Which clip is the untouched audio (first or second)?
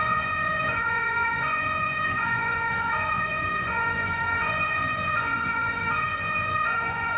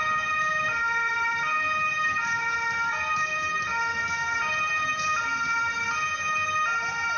second